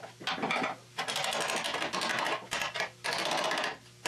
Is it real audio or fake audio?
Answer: real